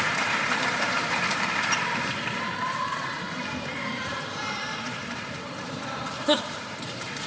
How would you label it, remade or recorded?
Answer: remade